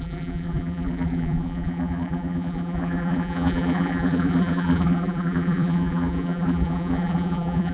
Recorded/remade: remade